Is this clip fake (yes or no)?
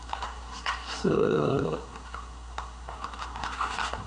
yes